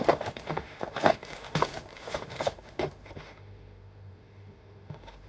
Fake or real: fake